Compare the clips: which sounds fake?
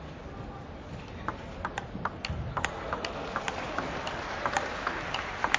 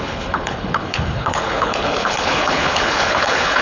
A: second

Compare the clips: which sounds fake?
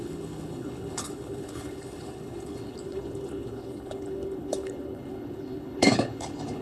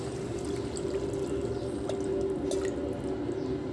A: first